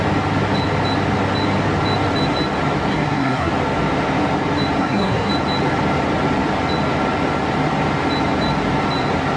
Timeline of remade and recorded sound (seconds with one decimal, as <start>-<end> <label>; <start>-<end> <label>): 0.0-2.9 recorded; 2.9-3.5 remade; 3.5-4.8 recorded; 4.8-5.3 remade; 5.3-9.4 recorded